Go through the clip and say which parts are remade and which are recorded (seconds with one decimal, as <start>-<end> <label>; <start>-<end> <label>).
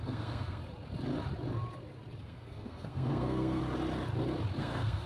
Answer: 0.0-0.6 remade; 0.6-2.2 recorded; 2.2-3.6 remade; 3.6-4.6 recorded; 4.6-5.1 remade